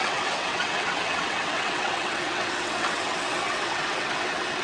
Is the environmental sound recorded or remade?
remade